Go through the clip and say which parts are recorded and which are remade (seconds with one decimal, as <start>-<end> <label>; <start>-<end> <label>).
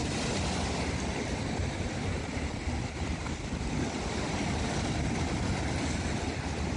0.0-6.8 recorded